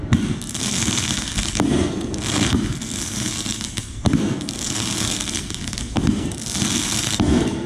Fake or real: fake